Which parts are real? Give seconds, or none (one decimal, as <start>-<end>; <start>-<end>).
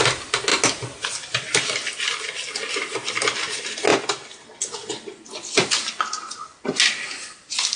0.0-7.8